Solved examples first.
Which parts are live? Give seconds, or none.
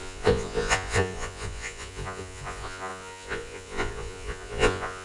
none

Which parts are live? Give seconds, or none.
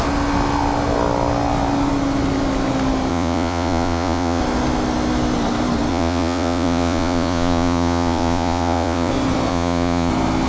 0.0-3.1; 4.4-5.9; 9.1-9.5; 10.1-10.5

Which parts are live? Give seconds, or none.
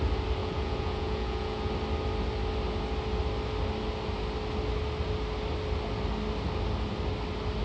0.0-0.4; 1.7-7.6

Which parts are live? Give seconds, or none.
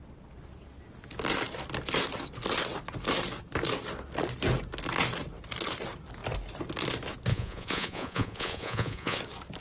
0.0-7.3; 9.2-9.6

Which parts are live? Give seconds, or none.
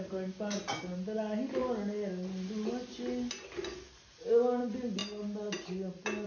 0.0-6.3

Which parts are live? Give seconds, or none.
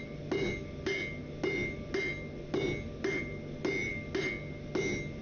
0.0-5.2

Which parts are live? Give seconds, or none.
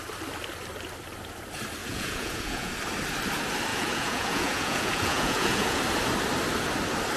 0.0-1.8; 2.7-3.7; 5.8-7.2